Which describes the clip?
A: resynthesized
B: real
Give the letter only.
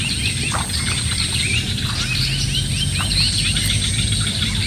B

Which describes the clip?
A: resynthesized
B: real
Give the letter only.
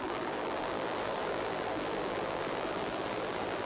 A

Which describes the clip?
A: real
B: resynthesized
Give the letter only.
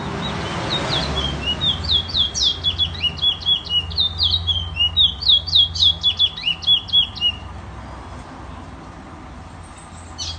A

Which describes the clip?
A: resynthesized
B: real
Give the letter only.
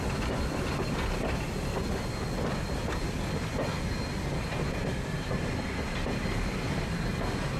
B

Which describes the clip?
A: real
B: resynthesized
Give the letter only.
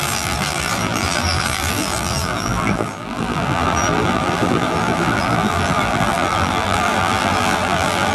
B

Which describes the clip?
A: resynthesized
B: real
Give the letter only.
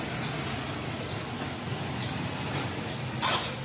B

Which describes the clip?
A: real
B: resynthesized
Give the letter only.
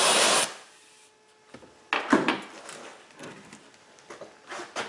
A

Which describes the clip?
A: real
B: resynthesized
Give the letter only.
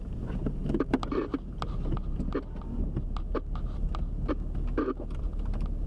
A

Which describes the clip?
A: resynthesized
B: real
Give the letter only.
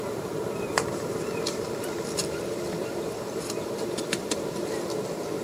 A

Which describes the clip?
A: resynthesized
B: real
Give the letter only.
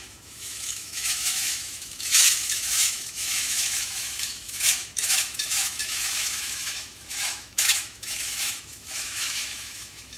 A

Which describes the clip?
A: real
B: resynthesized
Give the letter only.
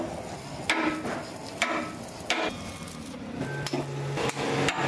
A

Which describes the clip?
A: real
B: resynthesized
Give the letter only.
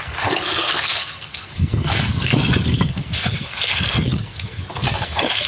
B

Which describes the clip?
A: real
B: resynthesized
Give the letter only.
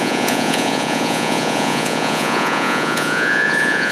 B